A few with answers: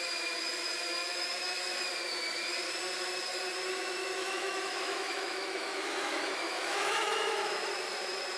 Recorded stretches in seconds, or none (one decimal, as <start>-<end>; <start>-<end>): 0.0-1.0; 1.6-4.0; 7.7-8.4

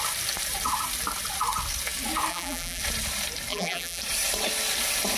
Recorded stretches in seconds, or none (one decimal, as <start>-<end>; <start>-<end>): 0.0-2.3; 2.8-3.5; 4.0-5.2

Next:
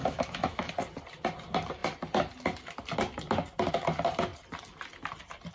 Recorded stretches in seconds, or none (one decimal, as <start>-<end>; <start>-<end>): 0.7-5.5

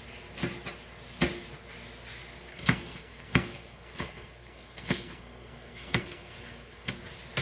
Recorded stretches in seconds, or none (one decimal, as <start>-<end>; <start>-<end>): 0.0-2.5; 6.9-7.4

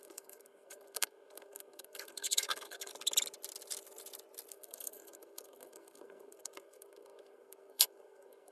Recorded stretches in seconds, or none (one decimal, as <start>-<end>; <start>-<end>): 2.9-4.5

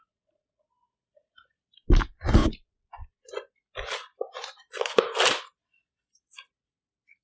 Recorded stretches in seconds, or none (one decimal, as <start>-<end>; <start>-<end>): 0.0-2.4; 3.3-7.2